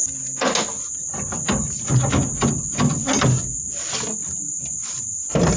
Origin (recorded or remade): recorded